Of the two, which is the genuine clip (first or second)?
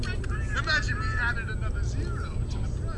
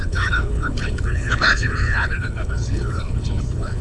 first